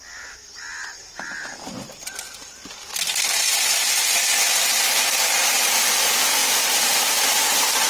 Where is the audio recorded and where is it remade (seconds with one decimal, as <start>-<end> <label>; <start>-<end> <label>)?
0.0-6.4 recorded; 6.4-7.9 remade